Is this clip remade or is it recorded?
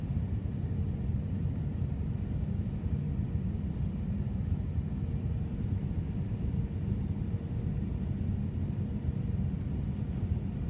recorded